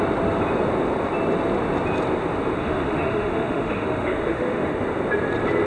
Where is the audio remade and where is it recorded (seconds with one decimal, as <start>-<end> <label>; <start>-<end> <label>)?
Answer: 0.0-2.6 recorded; 2.6-4.7 remade; 4.7-5.7 recorded